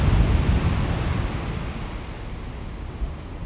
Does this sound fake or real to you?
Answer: real